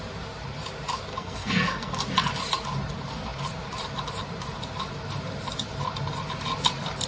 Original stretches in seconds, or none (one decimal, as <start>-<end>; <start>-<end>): 0.0-1.1; 2.0-7.1